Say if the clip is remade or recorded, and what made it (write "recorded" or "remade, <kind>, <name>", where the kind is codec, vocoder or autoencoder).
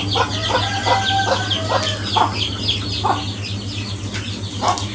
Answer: recorded